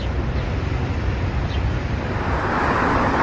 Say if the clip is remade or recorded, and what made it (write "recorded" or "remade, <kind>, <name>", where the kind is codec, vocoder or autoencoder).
recorded